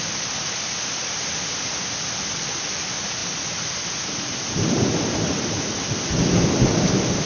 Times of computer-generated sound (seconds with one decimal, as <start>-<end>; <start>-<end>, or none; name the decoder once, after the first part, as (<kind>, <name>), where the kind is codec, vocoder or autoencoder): none